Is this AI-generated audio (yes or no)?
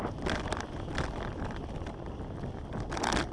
no